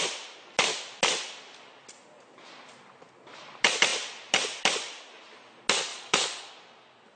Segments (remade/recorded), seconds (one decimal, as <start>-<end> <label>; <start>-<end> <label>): 0.0-5.9 recorded; 5.9-6.5 remade; 6.5-7.2 recorded